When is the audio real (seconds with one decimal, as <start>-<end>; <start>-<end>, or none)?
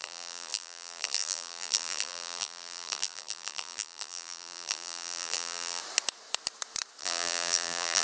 5.8-7.0